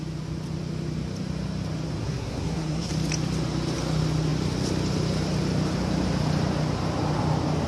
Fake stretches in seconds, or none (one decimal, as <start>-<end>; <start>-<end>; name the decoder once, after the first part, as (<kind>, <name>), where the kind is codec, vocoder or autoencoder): 2.0-2.9 (codec, SNAC)

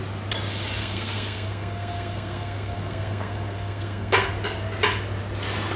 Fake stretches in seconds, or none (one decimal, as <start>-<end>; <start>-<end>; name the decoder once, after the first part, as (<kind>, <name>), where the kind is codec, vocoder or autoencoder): 0.8-4.3 (codec, SNAC)

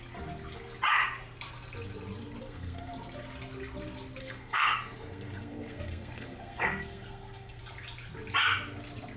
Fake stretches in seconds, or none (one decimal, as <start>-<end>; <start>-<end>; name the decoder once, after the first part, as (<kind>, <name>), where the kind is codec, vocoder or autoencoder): 2.4-2.9 (codec, SNAC); 4.2-7.6

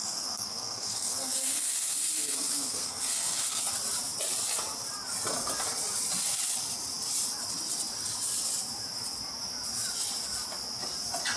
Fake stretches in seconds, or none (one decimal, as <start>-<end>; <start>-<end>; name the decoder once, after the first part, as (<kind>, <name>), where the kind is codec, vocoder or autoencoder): 0.0-3.6 (codec, SNAC)

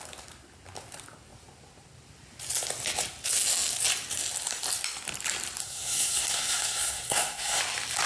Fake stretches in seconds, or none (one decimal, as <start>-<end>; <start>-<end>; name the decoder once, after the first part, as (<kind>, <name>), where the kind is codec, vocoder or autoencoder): 5.6-7.6 (codec, SNAC)

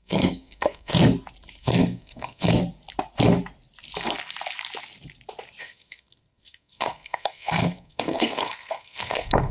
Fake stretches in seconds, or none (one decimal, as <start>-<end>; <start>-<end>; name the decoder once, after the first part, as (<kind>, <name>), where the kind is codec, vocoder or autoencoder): 0.0-0.9 (codec, SNAC); 1.6-2.5; 5.6-9.5